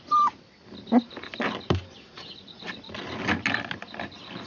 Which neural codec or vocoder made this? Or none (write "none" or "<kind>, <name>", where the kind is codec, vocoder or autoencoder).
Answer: none